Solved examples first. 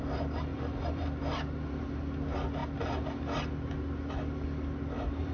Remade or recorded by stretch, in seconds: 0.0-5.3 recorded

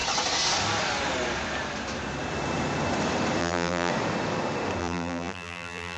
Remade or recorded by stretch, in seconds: 0.0-3.4 recorded; 3.4-3.9 remade; 3.9-4.8 recorded; 4.8-6.0 remade

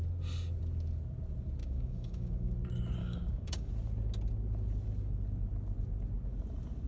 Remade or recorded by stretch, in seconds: 0.0-1.6 recorded; 1.6-2.5 remade; 2.5-3.0 recorded; 3.0-3.7 remade; 3.7-6.9 recorded

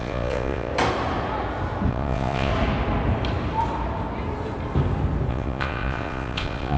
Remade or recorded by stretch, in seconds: 0.0-0.7 remade; 0.7-1.9 recorded; 1.9-2.5 remade; 2.5-5.3 recorded; 5.3-6.8 remade

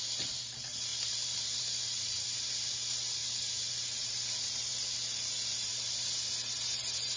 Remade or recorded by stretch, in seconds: 0.0-0.9 recorded; 0.9-1.6 remade; 1.6-7.2 recorded